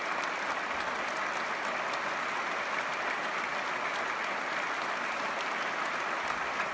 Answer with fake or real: real